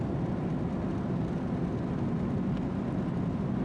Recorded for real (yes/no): yes